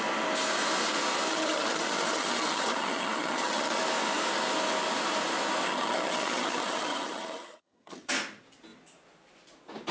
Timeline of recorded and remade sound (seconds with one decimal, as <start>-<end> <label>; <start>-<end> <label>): 0.0-1.3 recorded; 1.3-3.8 remade; 3.8-5.6 recorded; 5.6-8.1 remade; 8.1-9.9 recorded